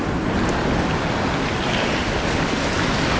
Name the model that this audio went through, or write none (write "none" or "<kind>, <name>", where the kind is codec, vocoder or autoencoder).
none